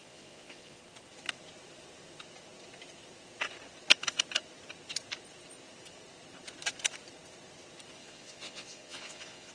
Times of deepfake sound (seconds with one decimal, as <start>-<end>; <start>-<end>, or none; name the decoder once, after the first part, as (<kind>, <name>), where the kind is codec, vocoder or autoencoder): 0.0-0.8 (vocoder, Vocos); 8.0-9.5